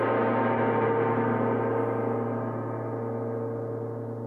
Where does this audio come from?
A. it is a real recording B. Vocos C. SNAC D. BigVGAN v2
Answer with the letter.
A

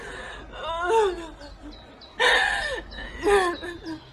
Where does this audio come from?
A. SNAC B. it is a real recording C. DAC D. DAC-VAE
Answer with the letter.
B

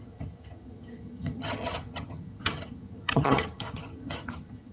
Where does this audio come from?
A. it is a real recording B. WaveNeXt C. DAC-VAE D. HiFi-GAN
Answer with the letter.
D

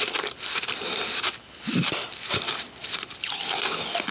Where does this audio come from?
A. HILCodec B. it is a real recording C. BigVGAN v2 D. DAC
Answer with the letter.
B